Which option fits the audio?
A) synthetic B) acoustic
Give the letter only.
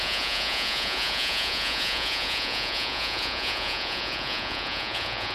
A